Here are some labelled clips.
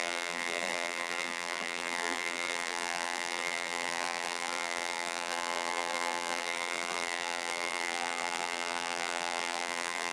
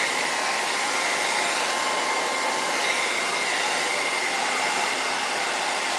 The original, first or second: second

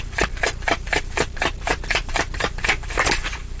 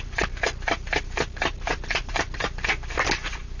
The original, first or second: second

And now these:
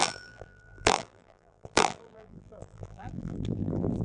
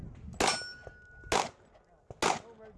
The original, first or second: second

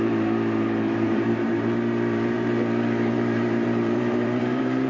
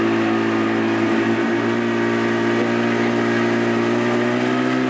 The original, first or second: second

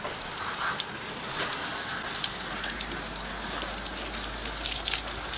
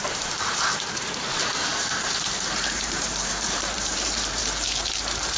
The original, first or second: first